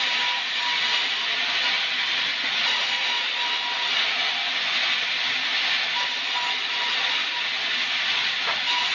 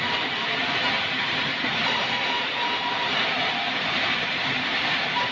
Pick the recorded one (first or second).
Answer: first